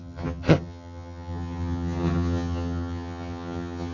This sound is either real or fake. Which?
fake